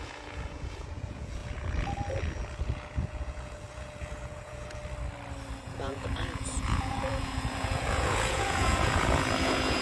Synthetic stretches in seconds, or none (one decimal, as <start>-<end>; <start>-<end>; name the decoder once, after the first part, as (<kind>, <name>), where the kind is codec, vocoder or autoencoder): 0.0-4.8 (vocoder, Vocos); 5.6-9.8